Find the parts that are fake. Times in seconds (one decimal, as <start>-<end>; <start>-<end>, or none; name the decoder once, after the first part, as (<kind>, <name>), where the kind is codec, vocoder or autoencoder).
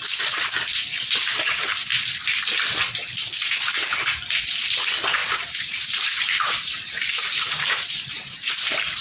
5.2-8.5 (vocoder, BigVGAN v2)